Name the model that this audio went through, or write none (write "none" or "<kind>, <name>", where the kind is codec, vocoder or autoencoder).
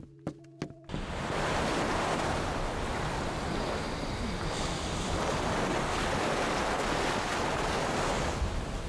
none